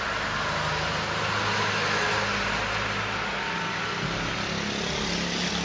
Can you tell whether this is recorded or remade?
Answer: recorded